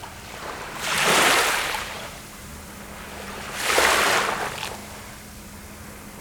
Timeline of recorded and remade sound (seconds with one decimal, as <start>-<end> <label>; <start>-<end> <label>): 0.0-3.7 remade; 3.7-6.2 recorded